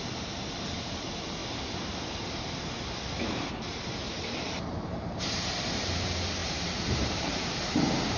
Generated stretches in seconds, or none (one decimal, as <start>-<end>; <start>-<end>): 0.0-1.4; 3.2-8.2